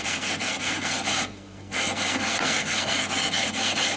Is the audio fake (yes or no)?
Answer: yes